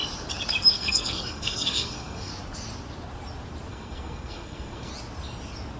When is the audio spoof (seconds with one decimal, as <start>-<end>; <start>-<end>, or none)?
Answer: 0.7-2.3; 3.7-4.9